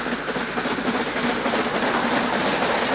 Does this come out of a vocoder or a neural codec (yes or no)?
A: no